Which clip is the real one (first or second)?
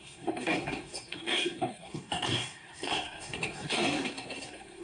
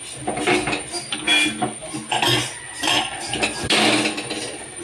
second